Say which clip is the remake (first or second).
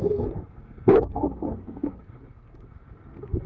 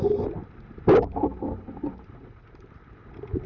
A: first